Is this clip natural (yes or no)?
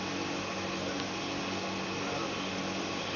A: yes